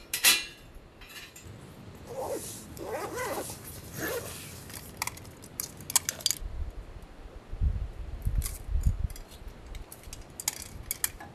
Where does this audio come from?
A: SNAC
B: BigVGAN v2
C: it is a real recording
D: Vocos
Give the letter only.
C